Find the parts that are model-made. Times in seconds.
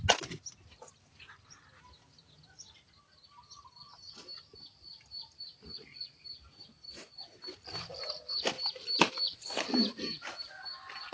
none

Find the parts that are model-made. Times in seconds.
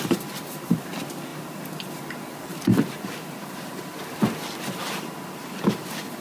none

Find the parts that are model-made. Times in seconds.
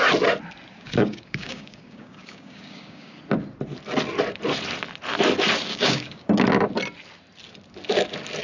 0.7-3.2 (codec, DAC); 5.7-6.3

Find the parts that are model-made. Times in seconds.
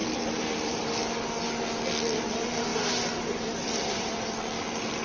0.0-0.9 (vocoder, BigVGAN v2); 2.7-4.3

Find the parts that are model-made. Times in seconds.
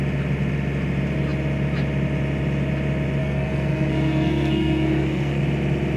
3.2-5.4 (codec, SNAC)